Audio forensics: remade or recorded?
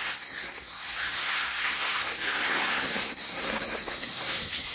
remade